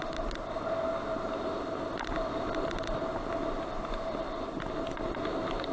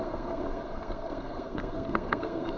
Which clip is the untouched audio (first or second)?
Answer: first